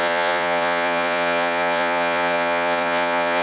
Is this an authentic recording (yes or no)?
no